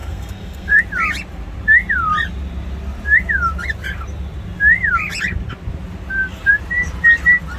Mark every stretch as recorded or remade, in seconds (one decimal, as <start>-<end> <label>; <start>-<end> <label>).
0.0-0.8 remade; 0.8-7.6 recorded